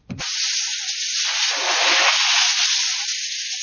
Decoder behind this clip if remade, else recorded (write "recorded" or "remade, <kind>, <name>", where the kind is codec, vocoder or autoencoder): recorded